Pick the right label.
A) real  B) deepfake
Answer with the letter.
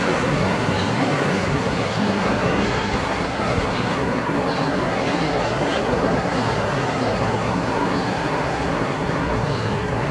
B